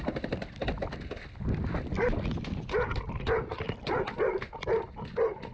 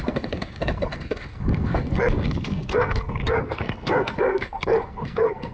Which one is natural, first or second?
first